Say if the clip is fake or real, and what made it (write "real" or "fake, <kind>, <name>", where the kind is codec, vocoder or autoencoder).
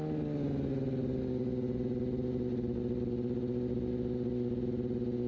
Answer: real